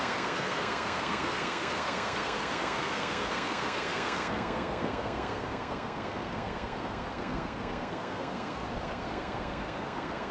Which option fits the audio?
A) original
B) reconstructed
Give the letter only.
B